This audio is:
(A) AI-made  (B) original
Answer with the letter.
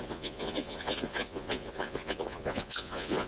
A